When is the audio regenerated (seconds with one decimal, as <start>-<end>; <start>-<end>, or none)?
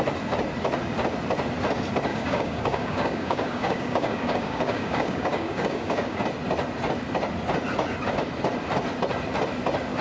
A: 2.1-6.2